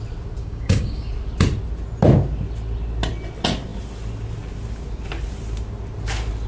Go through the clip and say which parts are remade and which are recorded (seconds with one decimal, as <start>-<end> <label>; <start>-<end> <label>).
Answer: 0.0-0.4 recorded; 0.4-1.1 remade; 1.1-6.5 recorded